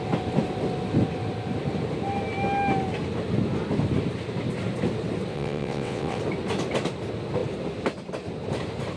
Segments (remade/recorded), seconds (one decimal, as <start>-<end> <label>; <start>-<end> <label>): 0.0-5.3 recorded; 5.3-6.2 remade; 6.2-9.0 recorded